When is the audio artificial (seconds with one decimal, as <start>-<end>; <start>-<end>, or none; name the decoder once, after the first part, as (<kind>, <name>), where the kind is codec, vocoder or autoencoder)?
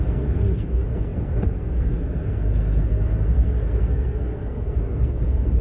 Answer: 0.0-5.6 (codec, SNAC)